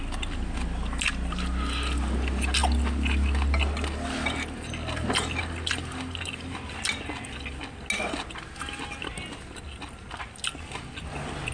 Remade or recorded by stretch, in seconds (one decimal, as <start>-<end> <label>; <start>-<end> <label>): 0.0-11.5 recorded